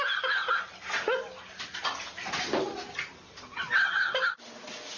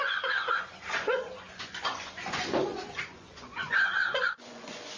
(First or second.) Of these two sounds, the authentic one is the first